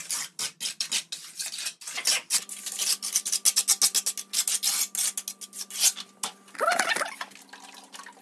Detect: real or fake real